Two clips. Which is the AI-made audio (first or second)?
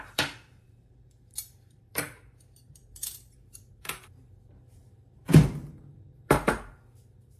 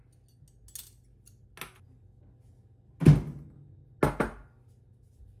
first